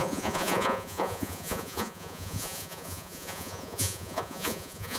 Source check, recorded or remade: remade